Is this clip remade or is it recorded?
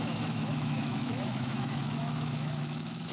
remade